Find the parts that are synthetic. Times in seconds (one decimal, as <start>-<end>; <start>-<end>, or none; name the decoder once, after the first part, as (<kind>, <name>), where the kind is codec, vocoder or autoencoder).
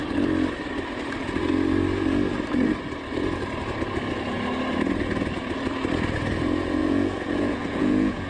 6.8-8.3 (vocoder, Vocos)